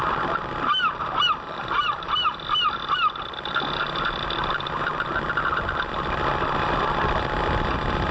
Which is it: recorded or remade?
recorded